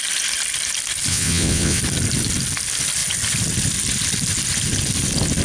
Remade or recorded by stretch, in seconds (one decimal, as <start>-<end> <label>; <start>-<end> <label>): 0.0-1.1 recorded; 1.1-1.8 remade; 1.8-5.4 recorded